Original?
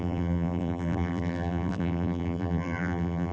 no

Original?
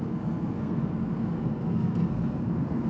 no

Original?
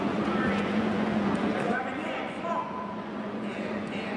no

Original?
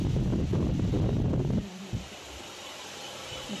yes